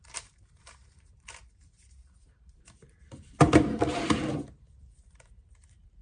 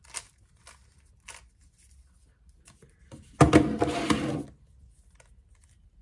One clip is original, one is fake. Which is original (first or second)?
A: second